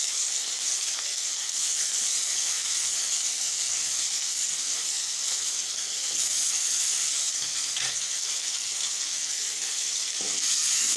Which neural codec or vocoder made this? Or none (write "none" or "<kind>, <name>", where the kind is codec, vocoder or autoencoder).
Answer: codec, SNAC